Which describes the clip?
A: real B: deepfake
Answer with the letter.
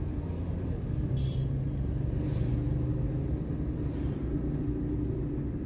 A